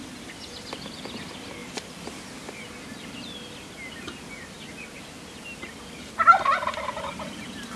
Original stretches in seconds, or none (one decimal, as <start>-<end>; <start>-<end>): 0.0-7.8